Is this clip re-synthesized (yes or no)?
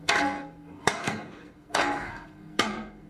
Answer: yes